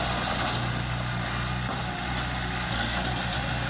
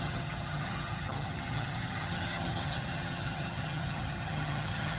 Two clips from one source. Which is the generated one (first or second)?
second